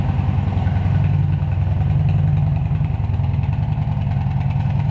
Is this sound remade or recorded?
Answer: recorded